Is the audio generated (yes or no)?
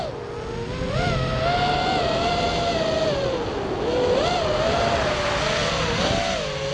no